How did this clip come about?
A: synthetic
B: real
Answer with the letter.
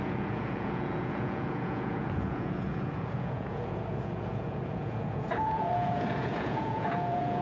A